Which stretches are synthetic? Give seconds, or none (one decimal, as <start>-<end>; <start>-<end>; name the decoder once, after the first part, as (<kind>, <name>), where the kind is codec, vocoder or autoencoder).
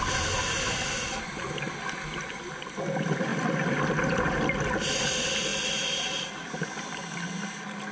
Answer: none